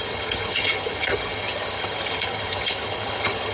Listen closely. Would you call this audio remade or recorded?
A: remade